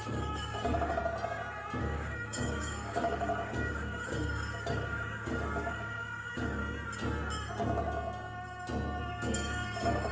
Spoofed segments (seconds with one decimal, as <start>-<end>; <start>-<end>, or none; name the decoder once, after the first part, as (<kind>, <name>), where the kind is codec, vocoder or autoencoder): 0.0-1.0 (codec, DAC); 1.8-6.6; 9.0-10.1